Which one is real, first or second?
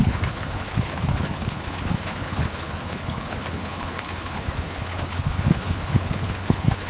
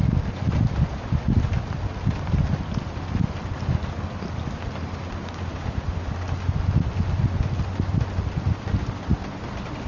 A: second